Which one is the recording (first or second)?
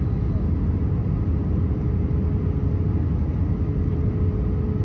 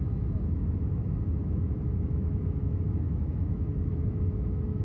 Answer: first